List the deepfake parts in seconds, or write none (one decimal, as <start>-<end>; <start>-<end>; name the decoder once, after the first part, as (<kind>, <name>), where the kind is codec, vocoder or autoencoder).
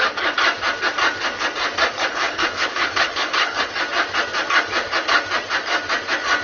2.1-3.7 (codec, HILCodec)